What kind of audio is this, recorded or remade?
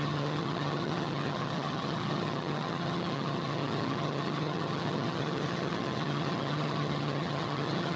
remade